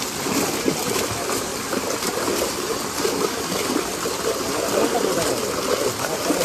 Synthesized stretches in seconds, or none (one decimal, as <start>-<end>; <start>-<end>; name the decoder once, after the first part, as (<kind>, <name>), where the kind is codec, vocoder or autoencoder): none